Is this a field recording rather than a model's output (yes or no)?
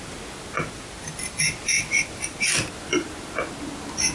yes